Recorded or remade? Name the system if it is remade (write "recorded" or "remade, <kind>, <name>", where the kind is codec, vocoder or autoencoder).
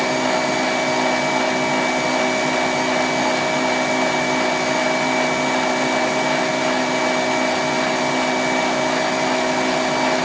recorded